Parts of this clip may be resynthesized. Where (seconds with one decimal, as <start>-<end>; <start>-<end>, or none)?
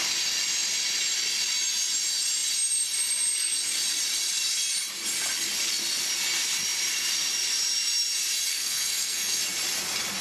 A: 8.5-9.4